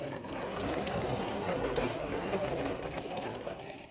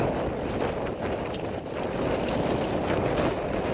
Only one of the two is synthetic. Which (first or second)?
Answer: first